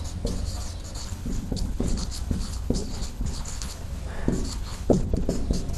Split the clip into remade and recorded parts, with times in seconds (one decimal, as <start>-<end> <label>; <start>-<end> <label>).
0.0-1.0 recorded; 1.0-4.0 remade; 4.0-4.5 recorded; 4.5-5.3 remade; 5.3-5.8 recorded